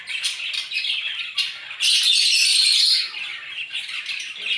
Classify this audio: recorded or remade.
recorded